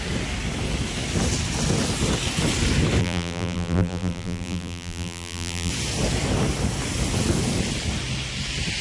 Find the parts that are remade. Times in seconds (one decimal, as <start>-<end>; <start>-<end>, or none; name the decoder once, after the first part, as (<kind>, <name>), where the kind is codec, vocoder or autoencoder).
3.0-5.7 (vocoder, BigVGAN v2)